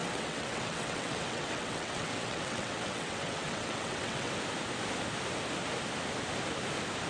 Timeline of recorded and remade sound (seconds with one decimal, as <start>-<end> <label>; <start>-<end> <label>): 0.0-4.3 remade; 4.3-7.1 recorded